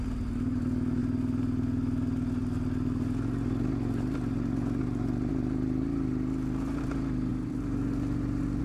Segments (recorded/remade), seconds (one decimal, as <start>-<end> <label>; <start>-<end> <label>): 0.0-8.6 recorded